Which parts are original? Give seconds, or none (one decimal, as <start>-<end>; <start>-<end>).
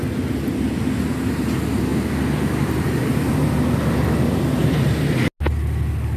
0.0-6.2